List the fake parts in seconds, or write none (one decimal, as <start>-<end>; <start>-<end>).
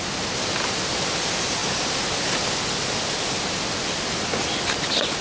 none